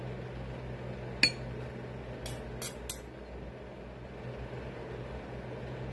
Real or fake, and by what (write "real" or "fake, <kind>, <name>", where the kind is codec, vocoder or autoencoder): real